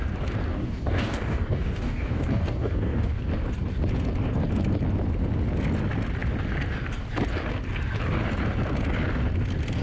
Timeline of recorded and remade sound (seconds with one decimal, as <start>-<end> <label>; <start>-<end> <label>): 0.0-0.5 recorded; 0.5-3.2 remade; 3.2-9.8 recorded